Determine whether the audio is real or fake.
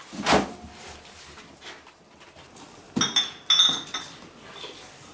real